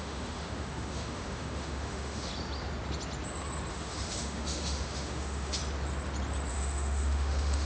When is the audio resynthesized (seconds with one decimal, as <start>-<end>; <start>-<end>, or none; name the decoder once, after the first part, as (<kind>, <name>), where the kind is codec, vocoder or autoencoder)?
0.0-2.3 (autoencoder, DAC-VAE); 3.7-5.6; 6.5-7.7